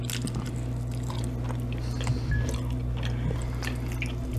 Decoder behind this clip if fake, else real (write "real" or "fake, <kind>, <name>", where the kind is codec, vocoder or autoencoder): real